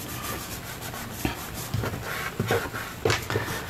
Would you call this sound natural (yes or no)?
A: yes